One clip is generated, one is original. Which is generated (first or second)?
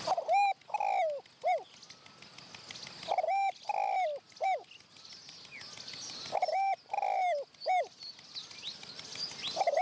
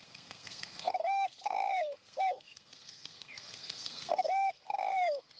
second